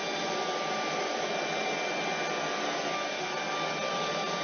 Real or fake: real